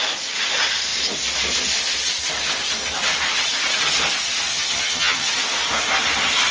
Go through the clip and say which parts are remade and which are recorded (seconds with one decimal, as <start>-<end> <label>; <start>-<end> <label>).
0.0-4.5 recorded; 4.5-5.3 remade; 5.3-6.5 recorded